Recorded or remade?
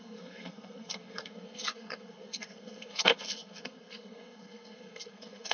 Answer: remade